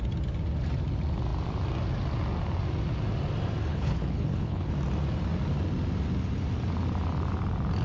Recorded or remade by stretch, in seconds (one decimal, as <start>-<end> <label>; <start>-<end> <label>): 0.0-3.7 recorded; 3.7-4.7 remade; 4.7-7.8 recorded